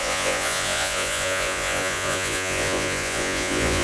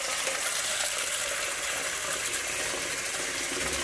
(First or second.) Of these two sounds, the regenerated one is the first